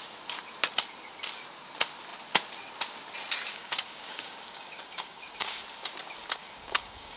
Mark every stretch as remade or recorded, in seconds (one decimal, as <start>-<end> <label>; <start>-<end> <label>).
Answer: 0.0-3.5 recorded; 3.5-5.6 remade; 5.6-6.4 recorded; 6.4-7.2 remade